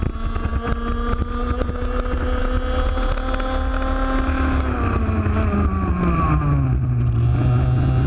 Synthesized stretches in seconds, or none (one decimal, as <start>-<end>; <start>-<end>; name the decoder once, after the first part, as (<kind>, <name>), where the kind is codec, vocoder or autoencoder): none